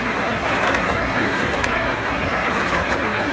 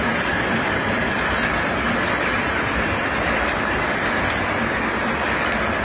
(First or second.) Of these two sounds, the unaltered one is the second